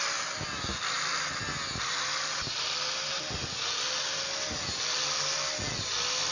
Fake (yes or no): no